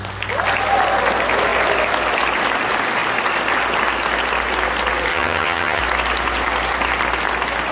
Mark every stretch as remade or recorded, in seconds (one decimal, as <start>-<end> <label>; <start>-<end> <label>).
0.0-5.1 recorded; 5.1-5.8 remade; 5.8-7.7 recorded